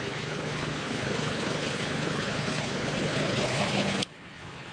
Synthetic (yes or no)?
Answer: yes